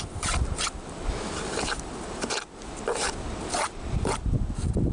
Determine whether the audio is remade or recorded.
recorded